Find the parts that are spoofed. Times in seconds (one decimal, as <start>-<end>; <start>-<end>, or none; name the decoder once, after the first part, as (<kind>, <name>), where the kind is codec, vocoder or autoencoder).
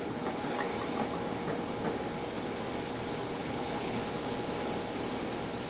0.0-0.7 (codec, HILCodec); 3.2-4.0